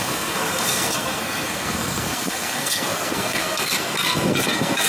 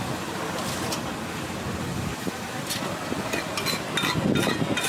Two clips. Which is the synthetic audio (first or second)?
first